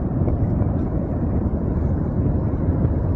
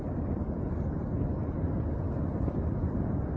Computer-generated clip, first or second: first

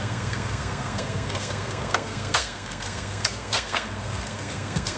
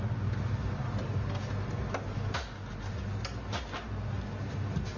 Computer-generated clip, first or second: first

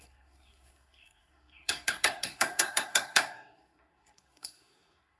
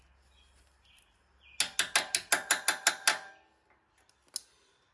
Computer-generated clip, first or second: first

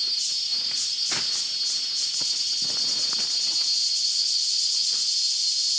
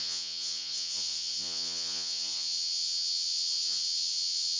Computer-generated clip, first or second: second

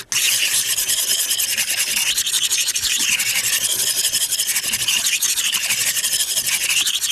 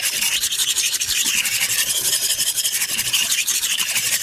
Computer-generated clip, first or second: second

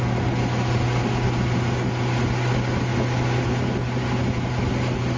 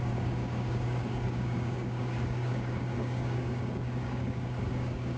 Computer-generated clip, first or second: second